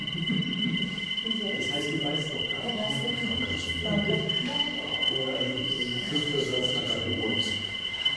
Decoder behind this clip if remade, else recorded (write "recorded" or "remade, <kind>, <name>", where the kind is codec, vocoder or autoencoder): remade, vocoder, BigVGAN v2